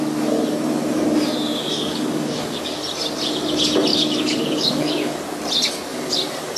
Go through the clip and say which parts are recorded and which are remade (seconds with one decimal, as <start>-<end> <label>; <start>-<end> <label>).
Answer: 0.0-1.5 recorded; 1.5-2.8 remade; 2.8-3.9 recorded; 3.9-5.2 remade; 5.2-6.6 recorded